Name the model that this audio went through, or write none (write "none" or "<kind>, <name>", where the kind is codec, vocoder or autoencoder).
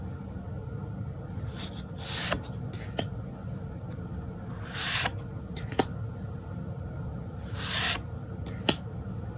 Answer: none